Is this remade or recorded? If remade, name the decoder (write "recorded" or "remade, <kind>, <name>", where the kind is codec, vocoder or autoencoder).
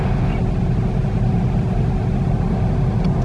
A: recorded